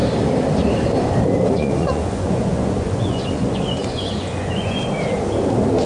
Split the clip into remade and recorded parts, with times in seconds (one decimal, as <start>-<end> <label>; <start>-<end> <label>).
0.0-1.4 recorded; 1.4-4.9 remade; 4.9-5.9 recorded